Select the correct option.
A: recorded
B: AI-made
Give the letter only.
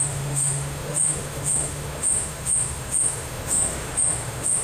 B